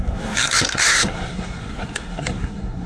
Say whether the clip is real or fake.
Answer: fake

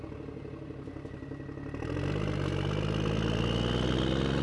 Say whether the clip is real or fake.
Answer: real